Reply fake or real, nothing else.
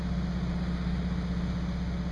real